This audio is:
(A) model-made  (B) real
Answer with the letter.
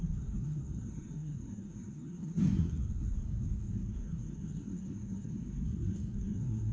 A